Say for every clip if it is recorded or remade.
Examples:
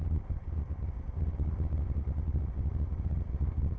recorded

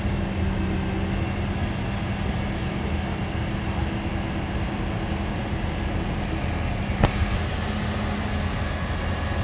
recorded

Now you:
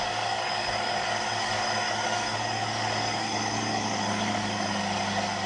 remade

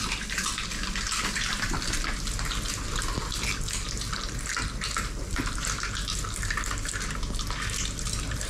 recorded